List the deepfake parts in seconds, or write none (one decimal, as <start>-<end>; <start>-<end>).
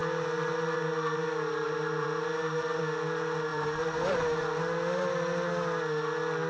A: 0.0-2.8; 3.5-5.5